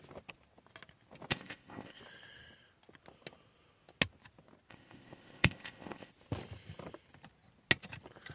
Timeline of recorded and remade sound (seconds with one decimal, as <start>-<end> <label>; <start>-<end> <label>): 0.0-1.3 recorded; 1.3-2.0 remade; 2.0-4.7 recorded; 4.7-6.1 remade; 6.1-8.3 recorded